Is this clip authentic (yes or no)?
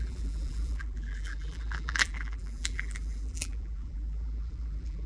no